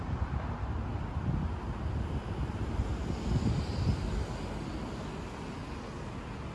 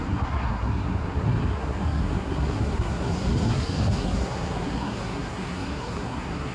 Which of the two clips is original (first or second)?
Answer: first